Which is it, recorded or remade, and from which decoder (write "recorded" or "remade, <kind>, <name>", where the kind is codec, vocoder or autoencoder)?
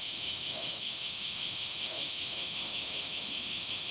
remade, autoencoder, DAC-VAE